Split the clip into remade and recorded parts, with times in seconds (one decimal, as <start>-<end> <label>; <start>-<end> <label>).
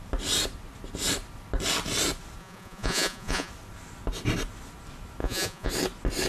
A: 0.0-2.4 recorded; 2.4-3.5 remade; 3.5-5.2 recorded; 5.2-5.7 remade; 5.7-6.3 recorded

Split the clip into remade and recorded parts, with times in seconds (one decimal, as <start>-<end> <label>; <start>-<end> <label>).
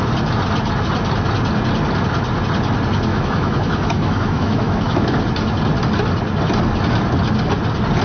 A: 0.0-3.1 recorded; 3.1-5.2 remade; 5.2-8.0 recorded